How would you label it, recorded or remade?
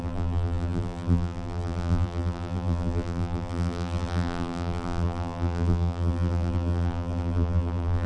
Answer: remade